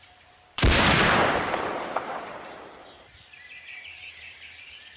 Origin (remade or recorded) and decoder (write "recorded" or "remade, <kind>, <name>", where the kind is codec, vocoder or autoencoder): remade, vocoder, BigVGAN v2